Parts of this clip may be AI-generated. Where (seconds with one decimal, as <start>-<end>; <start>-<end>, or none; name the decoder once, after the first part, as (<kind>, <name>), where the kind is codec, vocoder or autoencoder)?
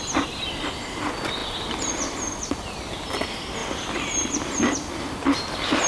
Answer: none